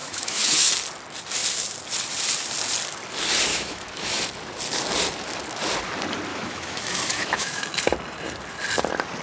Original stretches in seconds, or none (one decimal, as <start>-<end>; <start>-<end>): 0.7-3.5; 4.2-6.3; 7.8-9.2

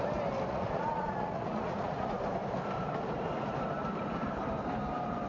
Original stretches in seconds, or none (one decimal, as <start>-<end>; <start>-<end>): 0.0-0.5; 2.2-5.3

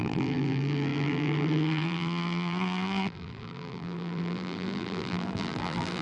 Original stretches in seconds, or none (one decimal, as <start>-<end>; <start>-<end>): none

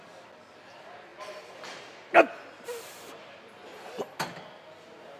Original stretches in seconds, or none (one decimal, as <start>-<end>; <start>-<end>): 0.0-5.2

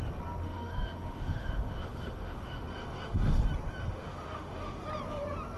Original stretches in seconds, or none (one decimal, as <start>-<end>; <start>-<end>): 0.0-0.4; 3.4-3.8; 4.8-5.6

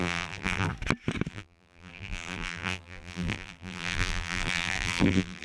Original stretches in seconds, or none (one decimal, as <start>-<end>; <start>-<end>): 0.7-1.3

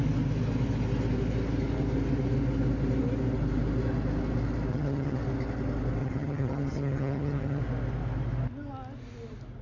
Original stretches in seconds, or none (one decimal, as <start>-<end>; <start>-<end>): 0.0-4.7; 5.2-6.0; 7.6-9.6